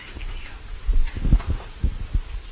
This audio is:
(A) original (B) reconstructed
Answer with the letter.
A